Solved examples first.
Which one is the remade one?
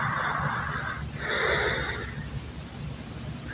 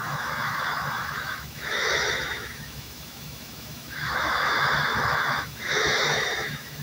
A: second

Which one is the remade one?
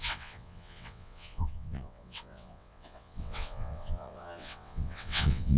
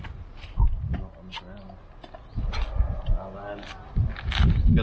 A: first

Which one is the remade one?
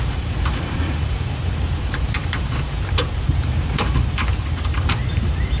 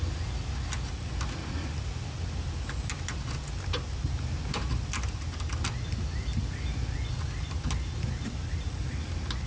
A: first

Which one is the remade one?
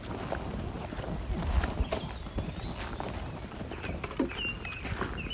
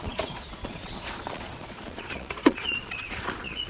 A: second